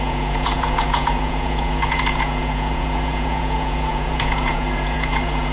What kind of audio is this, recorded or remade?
remade